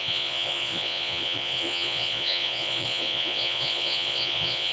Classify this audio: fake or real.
fake